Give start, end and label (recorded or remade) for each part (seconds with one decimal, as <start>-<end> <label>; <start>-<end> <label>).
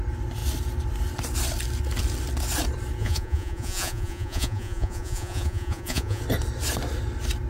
0.0-3.0 recorded; 3.0-6.2 remade; 6.2-7.5 recorded